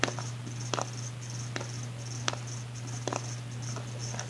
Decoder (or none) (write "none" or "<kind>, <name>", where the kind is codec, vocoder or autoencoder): none